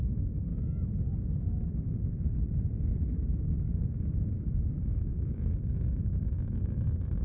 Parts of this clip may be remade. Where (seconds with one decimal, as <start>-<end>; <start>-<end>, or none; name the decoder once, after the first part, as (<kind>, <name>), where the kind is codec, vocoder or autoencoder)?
0.0-0.5 (codec, DAC); 3.1-7.2